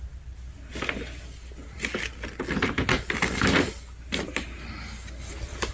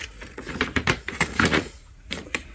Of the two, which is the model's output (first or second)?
second